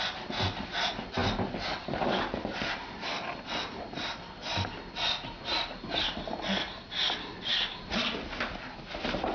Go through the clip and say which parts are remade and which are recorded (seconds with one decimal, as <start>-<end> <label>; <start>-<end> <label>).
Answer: 0.0-9.3 recorded